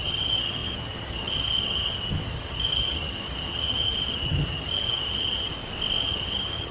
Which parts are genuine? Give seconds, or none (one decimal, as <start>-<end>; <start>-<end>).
5.5-6.0